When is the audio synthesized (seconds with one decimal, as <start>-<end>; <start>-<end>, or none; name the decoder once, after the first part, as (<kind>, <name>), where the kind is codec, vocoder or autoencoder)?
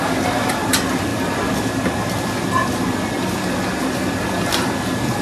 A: none